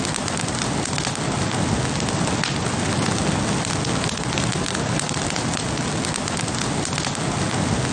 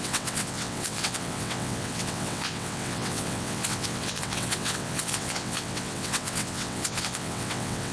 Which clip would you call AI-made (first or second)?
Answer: second